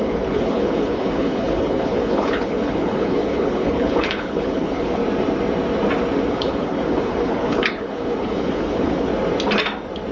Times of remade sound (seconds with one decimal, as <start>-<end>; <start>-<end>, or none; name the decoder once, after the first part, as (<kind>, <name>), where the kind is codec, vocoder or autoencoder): 0.0-5.0 (codec, HILCodec); 6.3-9.1